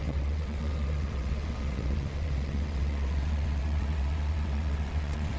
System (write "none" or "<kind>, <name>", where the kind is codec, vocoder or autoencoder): vocoder, WaveNeXt